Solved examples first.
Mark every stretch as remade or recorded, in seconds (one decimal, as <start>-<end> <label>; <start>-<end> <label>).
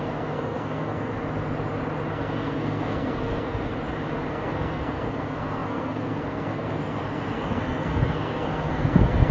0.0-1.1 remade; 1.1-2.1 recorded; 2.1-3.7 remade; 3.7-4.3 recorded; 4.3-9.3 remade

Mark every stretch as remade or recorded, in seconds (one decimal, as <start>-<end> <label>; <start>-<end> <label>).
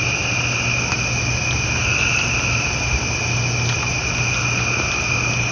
0.0-5.5 recorded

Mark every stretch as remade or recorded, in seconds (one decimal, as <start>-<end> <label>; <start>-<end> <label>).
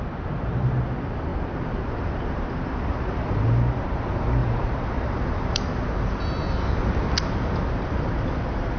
0.0-1.3 recorded; 1.3-3.3 remade; 3.3-4.4 recorded; 4.4-5.8 remade; 5.8-8.8 recorded